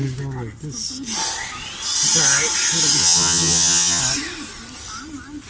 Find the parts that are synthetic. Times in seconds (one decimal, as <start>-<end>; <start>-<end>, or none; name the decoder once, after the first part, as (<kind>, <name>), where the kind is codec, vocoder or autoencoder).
3.0-4.0 (vocoder, HiFi-GAN)